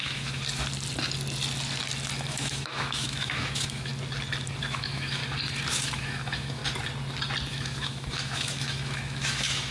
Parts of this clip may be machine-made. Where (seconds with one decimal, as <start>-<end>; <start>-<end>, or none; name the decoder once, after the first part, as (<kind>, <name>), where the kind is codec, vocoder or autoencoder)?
0.0-0.4 (autoencoder, DAC-VAE); 2.3-3.9; 4.6-5.2; 5.7-6.6; 7.5-9.7